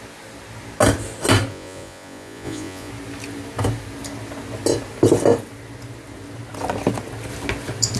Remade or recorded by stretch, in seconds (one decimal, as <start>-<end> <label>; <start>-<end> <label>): 0.0-1.5 recorded; 1.5-2.9 remade; 2.9-8.0 recorded